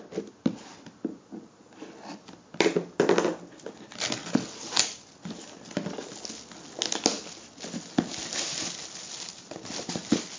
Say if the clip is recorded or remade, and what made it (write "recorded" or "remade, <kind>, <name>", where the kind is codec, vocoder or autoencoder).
recorded